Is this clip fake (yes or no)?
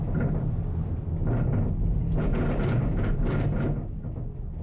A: no